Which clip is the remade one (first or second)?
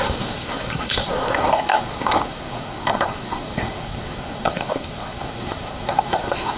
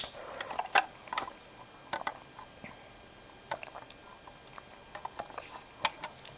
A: first